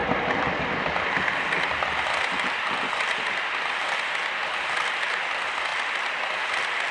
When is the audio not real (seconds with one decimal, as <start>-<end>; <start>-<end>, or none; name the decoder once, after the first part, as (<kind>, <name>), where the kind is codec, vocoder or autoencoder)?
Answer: 0.0-5.7 (vocoder, BigVGAN v2); 6.5-6.9